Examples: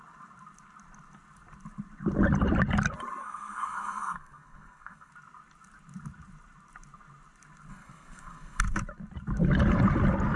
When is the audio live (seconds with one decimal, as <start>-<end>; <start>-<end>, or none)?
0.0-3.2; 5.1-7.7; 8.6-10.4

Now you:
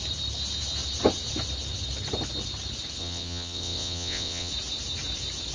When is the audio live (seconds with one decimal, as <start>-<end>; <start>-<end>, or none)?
0.0-3.0; 4.5-5.5

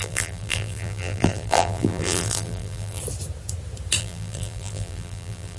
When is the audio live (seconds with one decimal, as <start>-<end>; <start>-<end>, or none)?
3.0-4.0

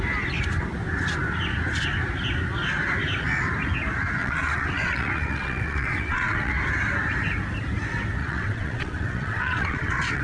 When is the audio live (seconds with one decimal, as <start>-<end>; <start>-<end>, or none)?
0.0-4.2; 6.5-8.2